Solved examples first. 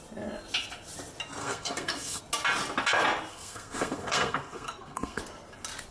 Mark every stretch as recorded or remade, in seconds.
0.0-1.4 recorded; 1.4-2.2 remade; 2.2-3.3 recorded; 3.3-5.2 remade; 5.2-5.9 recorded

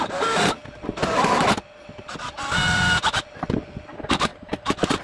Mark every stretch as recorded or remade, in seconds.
0.0-5.0 recorded

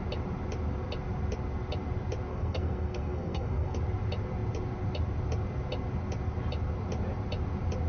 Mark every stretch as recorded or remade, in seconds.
0.0-2.3 recorded; 2.3-3.8 remade; 3.8-7.9 recorded

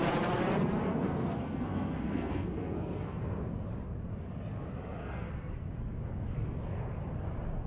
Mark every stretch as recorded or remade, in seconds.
0.0-0.9 recorded; 0.9-3.2 remade; 3.2-5.0 recorded; 5.0-5.7 remade; 5.7-7.7 recorded

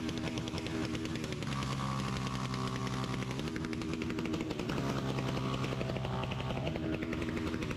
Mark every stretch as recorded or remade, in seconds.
0.0-7.8 recorded

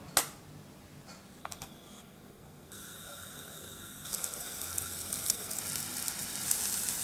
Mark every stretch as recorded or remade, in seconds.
0.0-1.4 recorded; 1.4-5.6 remade; 5.6-7.0 recorded

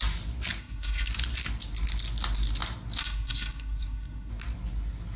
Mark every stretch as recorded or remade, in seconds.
0.0-0.6 recorded; 0.6-1.1 remade; 1.1-3.0 recorded; 3.0-4.3 remade; 4.3-5.2 recorded